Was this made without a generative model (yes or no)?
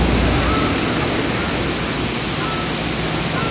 yes